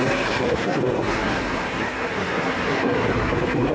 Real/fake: fake